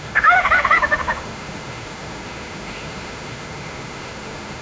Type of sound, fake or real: fake